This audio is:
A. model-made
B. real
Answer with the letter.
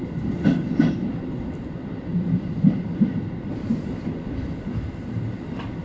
A